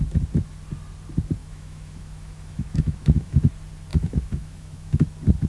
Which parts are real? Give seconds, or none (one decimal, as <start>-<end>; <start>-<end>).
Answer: 0.0-1.4; 3.5-3.9; 5.0-5.5